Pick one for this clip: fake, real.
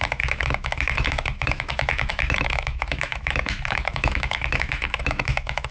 fake